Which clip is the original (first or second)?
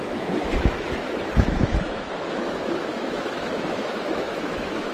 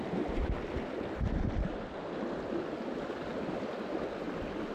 second